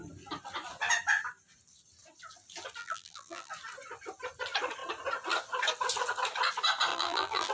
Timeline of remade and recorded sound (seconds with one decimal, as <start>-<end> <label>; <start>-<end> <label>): 0.0-2.8 recorded; 2.8-3.5 remade; 3.5-6.9 recorded; 6.9-7.5 remade

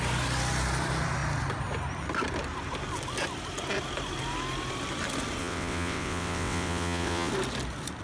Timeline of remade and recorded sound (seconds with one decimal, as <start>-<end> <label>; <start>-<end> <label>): 0.0-5.4 recorded; 5.4-7.3 remade; 7.3-8.0 recorded

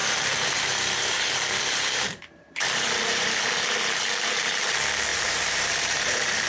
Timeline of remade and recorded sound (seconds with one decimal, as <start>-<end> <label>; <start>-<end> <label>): 0.0-3.5 remade; 3.5-5.1 recorded; 5.1-6.5 remade